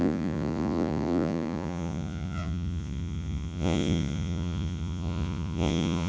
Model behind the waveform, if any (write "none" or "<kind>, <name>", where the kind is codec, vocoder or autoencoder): vocoder, Vocos